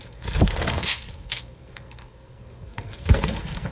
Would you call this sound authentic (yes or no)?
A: no